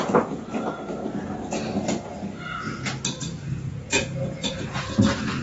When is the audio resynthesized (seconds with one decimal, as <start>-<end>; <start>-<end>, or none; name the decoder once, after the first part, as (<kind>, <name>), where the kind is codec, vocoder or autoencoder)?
0.0-0.5 (vocoder, Vocos); 3.7-5.4